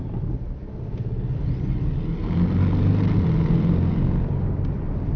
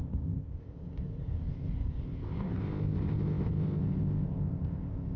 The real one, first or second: first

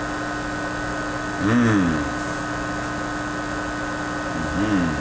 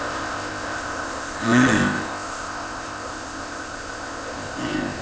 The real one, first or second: first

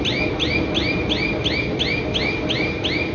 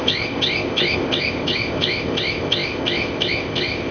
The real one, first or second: first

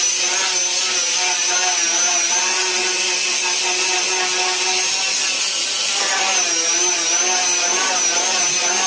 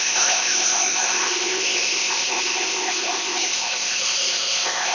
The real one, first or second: first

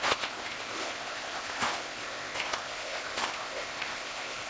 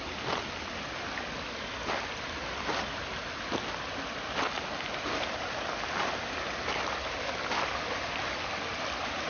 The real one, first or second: second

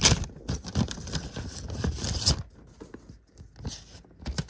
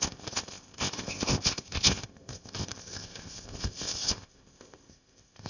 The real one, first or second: first